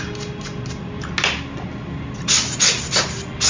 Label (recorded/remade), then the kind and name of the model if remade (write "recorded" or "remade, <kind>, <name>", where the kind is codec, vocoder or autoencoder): recorded